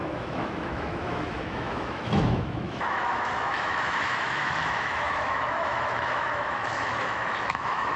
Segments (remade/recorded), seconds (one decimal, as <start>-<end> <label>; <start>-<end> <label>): 0.0-8.0 remade